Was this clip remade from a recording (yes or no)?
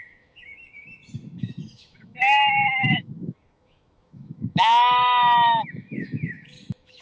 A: yes